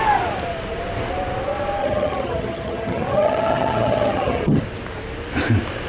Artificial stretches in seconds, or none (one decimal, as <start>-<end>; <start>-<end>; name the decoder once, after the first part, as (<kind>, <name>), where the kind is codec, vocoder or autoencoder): 1.8-4.6 (vocoder, HiFi-GAN)